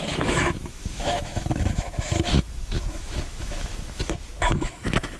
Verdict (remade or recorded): remade